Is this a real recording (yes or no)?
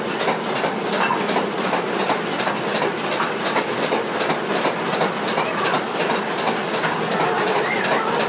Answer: yes